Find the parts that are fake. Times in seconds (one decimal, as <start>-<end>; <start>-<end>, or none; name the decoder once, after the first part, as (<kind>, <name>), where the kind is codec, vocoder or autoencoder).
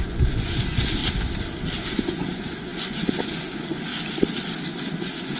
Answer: 0.0-1.0 (vocoder, Vocos); 1.8-3.9; 5.0-5.4